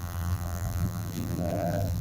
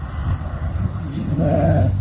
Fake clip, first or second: first